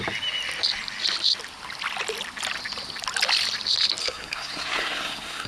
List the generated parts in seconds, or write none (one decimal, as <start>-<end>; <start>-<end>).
4.0-5.5